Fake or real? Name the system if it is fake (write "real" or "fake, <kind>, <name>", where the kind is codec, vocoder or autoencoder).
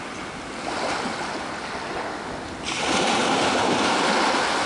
real